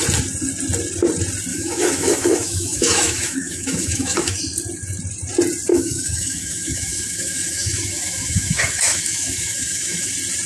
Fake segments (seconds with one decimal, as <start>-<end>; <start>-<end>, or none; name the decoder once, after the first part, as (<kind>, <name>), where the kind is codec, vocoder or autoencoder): 1.5-4.4 (autoencoder, DAC-VAE); 5.7-10.1